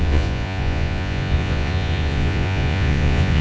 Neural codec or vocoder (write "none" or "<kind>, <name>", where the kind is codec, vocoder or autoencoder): vocoder, Vocos